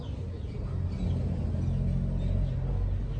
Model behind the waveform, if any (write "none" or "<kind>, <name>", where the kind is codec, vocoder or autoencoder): none